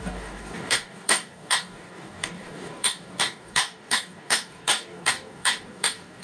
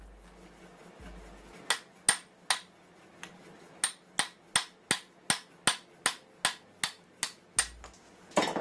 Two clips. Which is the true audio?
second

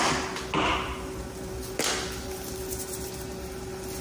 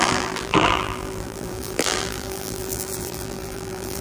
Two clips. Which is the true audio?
first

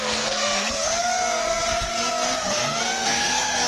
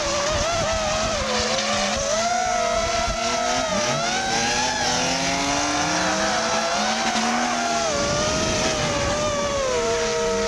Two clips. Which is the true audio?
second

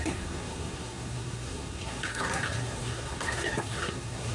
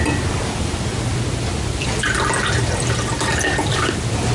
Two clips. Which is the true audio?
second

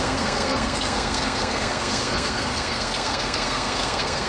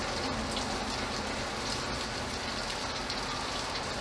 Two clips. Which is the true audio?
second